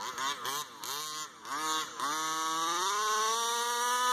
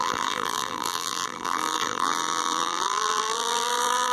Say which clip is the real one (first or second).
first